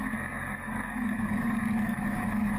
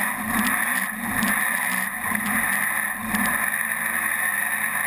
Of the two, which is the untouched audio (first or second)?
second